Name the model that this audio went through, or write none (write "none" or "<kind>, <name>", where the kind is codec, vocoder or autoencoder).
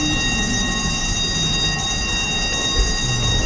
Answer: none